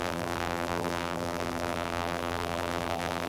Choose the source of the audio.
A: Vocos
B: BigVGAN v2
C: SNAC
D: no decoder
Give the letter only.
B